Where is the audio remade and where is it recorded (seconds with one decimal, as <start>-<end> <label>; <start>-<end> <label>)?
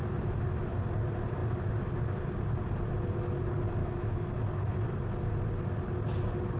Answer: 0.0-3.8 recorded; 3.8-4.4 remade; 4.4-6.6 recorded